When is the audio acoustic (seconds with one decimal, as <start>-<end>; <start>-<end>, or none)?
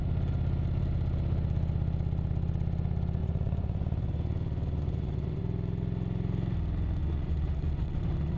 0.0-3.2; 5.4-7.0